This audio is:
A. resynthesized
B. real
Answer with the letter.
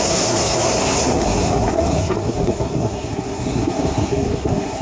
A